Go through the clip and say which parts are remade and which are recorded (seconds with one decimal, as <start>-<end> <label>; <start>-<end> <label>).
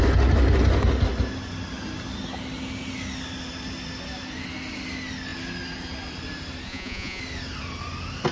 0.0-6.7 recorded; 6.7-7.2 remade; 7.2-8.3 recorded